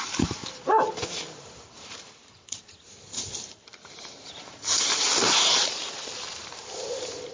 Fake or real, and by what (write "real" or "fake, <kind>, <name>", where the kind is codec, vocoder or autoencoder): fake, vocoder, BigVGAN v2